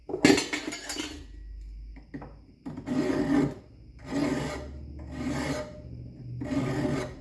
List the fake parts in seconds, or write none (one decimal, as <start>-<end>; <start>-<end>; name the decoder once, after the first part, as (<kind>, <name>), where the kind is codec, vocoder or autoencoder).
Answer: none